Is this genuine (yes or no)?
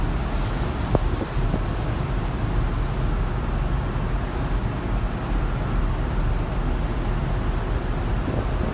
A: yes